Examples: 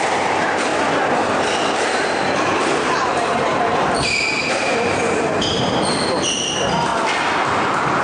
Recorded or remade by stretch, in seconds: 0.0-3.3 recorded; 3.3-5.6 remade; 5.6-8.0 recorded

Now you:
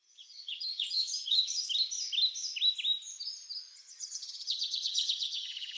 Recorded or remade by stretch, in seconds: 0.0-1.6 remade; 1.6-3.7 recorded; 3.7-5.8 remade

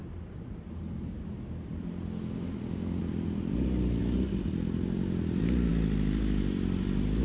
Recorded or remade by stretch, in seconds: 0.0-7.2 recorded

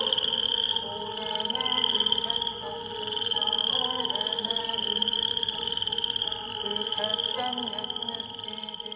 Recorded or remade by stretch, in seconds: 0.0-9.0 recorded